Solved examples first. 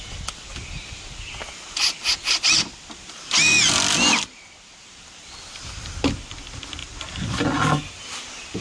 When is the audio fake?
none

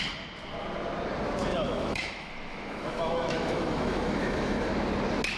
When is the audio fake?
1.5-4.7 (autoencoder, DAC-VAE)

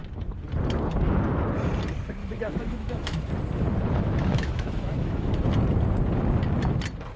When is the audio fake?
2.2-3.3 (autoencoder, DAC-VAE); 4.3-5.3

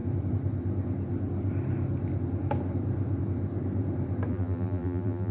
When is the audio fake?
4.3-5.3 (vocoder, BigVGAN v2)

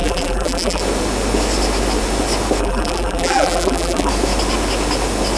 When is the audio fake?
0.0-0.8 (vocoder, BigVGAN v2); 2.6-4.1